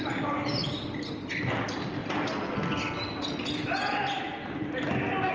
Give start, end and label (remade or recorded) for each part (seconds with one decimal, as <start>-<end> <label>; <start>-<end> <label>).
0.0-5.3 recorded